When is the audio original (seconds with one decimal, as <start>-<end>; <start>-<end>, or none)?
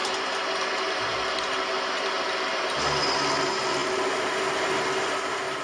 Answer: 0.0-5.6